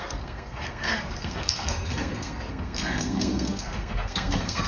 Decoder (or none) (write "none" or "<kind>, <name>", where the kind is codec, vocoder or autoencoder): codec, SNAC